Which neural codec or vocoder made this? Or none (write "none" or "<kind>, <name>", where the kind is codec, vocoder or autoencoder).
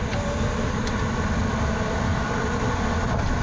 none